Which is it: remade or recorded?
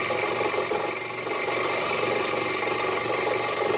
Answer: recorded